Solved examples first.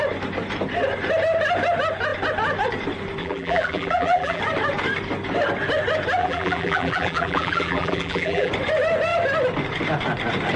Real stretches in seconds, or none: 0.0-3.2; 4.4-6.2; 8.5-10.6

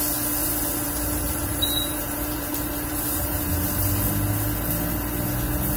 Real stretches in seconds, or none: 0.0-0.4; 3.9-5.8

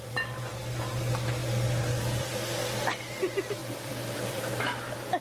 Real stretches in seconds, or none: 0.0-3.6; 4.5-5.2